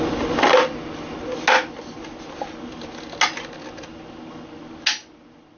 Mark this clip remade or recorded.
recorded